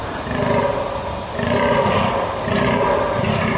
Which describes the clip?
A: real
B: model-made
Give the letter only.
A